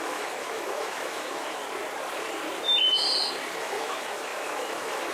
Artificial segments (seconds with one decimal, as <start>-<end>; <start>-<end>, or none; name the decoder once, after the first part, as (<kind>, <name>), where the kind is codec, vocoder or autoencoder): 0.0-1.6 (autoencoder, DAC-VAE); 3.6-5.1

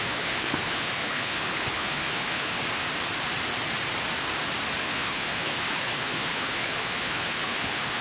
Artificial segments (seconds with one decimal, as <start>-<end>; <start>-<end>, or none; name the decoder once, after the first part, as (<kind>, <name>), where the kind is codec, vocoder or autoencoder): 0.0-2.6 (codec, HILCodec); 4.8-8.0

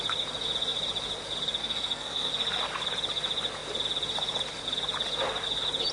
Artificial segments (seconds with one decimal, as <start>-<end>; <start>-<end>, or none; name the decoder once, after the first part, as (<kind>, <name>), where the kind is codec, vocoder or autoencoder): 1.6-2.3 (codec, SNAC)

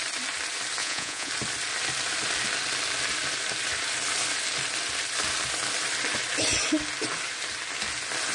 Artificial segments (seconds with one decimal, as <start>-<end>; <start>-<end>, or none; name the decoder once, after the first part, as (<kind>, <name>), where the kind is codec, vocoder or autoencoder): 0.8-1.3 (vocoder, Vocos)

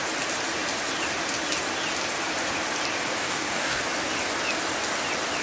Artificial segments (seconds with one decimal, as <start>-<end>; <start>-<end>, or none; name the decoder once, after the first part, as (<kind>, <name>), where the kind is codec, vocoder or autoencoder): 3.2-3.8 (codec, DAC)

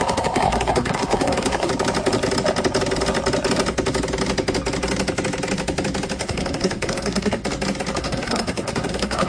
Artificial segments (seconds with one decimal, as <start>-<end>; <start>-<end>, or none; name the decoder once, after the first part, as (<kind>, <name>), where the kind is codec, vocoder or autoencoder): 0.0-1.7 (codec, SNAC); 6.2-7.4; 8.0-9.3

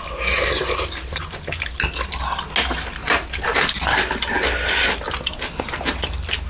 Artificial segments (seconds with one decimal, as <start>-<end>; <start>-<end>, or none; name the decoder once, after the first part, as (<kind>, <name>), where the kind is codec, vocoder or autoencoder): 3.0-4.1 (vocoder, BigVGAN v2)